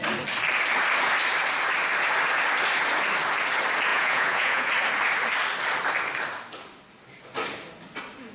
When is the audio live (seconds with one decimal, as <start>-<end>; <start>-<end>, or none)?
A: 0.0-3.9; 4.7-8.3